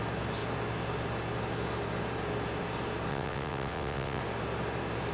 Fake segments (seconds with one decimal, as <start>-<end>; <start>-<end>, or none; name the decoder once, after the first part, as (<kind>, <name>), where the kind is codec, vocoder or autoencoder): 3.1-4.2 (vocoder, WaveNeXt)